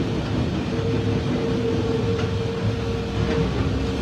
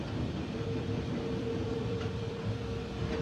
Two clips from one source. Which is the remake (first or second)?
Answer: second